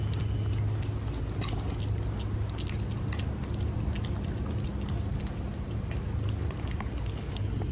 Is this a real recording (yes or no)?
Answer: yes